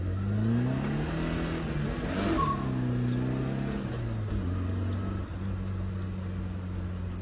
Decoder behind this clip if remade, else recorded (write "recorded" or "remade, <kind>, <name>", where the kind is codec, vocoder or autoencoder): recorded